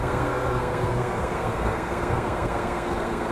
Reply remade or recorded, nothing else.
remade